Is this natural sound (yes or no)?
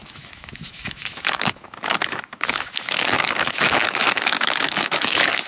no